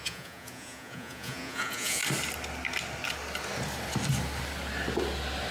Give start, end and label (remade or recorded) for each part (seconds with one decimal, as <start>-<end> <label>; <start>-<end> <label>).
0.0-2.0 remade; 2.0-5.5 recorded